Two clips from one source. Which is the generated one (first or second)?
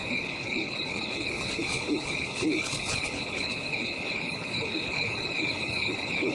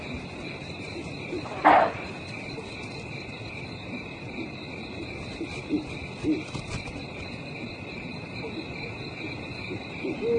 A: first